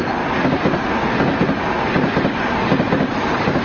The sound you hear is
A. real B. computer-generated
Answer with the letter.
A